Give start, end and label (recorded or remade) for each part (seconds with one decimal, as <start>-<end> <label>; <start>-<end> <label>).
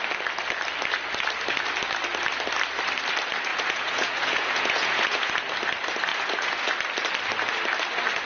0.0-3.5 recorded; 3.5-5.3 remade; 5.3-6.1 recorded; 6.1-6.7 remade; 6.7-8.3 recorded